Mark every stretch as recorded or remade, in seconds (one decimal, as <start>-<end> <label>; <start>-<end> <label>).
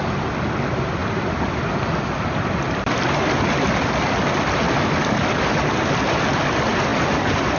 0.0-7.6 recorded